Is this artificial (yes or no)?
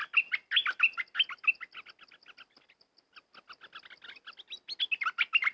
no